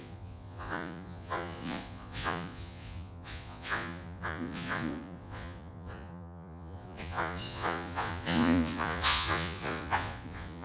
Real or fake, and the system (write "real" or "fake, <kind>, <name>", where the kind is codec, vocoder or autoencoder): fake, vocoder, Vocos